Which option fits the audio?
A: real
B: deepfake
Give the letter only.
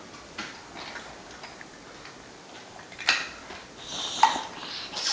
A